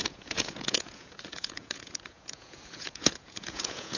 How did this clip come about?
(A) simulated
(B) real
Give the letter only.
A